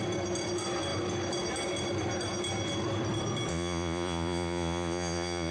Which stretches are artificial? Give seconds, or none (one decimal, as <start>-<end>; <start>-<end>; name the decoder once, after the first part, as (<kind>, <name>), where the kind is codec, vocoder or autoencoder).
3.5-5.5 (vocoder, Vocos)